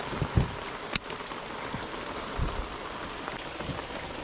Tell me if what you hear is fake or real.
real